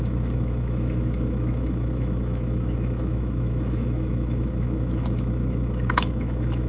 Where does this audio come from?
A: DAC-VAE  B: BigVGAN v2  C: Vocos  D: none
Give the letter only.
A